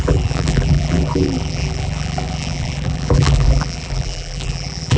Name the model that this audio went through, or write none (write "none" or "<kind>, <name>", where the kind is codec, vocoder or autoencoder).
vocoder, BigVGAN v2